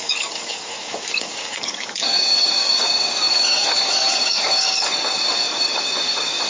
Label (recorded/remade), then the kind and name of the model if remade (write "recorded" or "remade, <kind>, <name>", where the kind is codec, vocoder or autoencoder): remade, codec, DAC